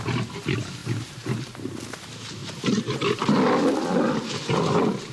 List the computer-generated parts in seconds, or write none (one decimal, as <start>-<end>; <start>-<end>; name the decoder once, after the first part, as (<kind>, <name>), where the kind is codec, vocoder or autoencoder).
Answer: 0.8-1.8 (vocoder, BigVGAN v2)